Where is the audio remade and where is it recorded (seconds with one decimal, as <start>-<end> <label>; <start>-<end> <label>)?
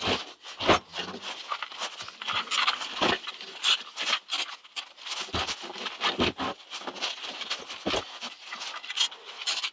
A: 0.0-9.7 recorded